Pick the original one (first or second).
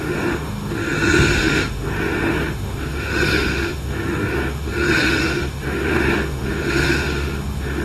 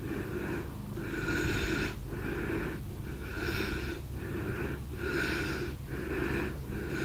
second